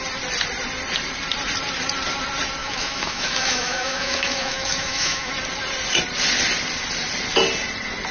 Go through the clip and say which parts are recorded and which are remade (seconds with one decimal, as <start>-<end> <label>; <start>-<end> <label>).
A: 0.0-2.6 recorded; 2.6-5.3 remade; 5.3-8.1 recorded